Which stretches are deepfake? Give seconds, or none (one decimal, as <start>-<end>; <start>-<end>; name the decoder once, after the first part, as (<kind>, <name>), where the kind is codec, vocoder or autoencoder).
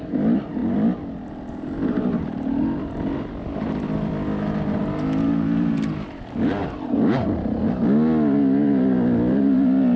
none